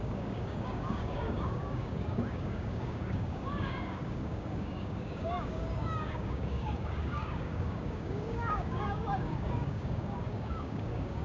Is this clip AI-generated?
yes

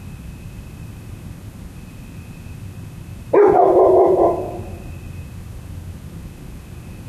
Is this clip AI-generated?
no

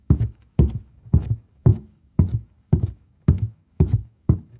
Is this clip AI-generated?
yes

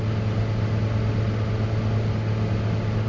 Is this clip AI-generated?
no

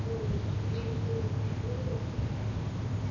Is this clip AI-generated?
no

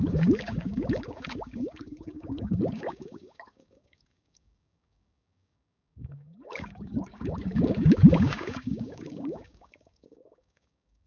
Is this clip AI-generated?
yes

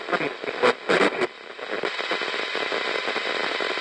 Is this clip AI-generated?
no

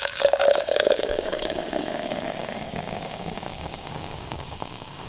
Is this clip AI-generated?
yes